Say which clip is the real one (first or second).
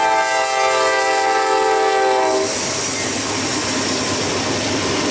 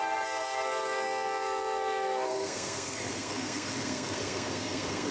first